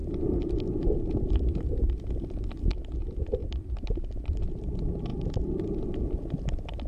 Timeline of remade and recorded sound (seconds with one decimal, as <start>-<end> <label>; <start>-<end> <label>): 0.0-6.9 recorded